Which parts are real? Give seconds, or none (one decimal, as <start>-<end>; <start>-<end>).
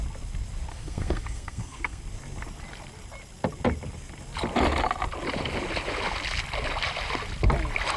0.0-0.7; 2.0-8.0